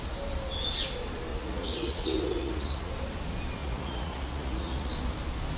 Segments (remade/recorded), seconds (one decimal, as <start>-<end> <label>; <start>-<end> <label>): 0.0-1.3 recorded; 1.3-2.9 remade; 2.9-3.6 recorded; 3.6-4.9 remade; 4.9-5.6 recorded